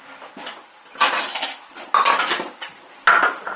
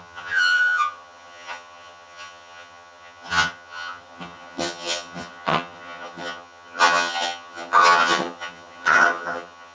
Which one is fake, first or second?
second